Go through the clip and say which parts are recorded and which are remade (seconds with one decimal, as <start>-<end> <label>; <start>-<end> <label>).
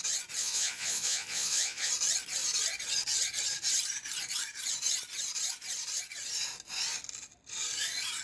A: 0.0-0.4 recorded; 0.4-1.9 remade; 1.9-8.2 recorded